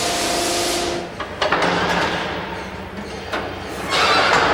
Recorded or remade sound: recorded